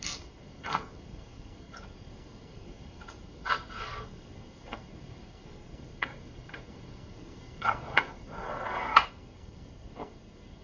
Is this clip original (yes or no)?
no